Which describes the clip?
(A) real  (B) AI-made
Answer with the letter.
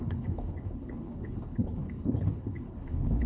B